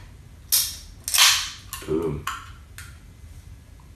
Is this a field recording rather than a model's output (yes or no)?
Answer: yes